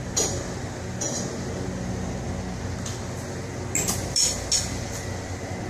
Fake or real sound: real